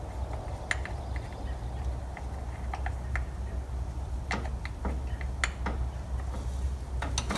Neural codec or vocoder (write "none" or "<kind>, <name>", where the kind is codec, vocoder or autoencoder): none